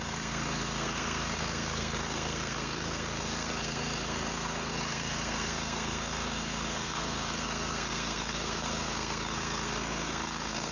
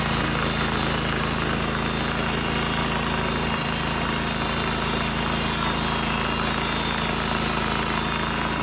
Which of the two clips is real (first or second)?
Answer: second